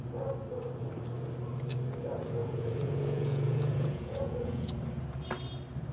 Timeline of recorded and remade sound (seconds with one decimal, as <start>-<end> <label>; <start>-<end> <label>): 0.0-2.4 recorded; 2.4-4.7 remade; 4.7-5.9 recorded